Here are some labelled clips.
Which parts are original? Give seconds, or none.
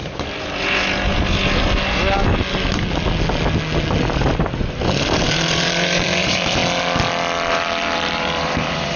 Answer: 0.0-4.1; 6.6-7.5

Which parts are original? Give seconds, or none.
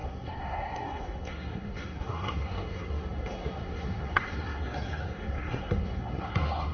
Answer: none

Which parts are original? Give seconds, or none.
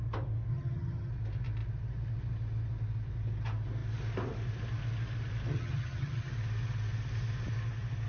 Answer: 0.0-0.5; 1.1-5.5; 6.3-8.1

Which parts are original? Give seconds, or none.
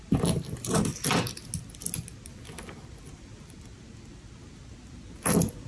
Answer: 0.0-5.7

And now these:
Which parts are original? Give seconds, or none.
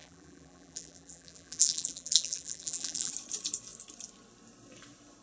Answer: 3.1-5.2